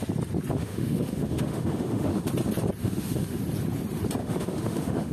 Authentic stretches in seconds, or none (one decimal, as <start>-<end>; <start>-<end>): 0.0-0.6; 2.3-2.8; 3.4-4.2